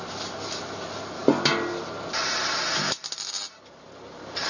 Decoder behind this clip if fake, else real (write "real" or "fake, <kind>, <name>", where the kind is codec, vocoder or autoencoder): real